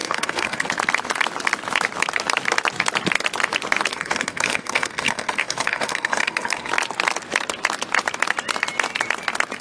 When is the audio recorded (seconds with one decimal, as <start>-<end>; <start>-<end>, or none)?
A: 0.7-3.9; 6.7-9.6